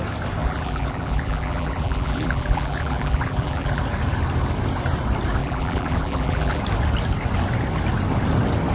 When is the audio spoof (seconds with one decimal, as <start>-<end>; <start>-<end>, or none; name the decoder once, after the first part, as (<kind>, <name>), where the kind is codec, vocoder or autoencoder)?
0.4-3.8 (vocoder, BigVGAN v2); 5.4-6.6